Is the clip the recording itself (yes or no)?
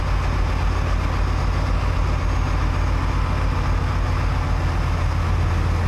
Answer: yes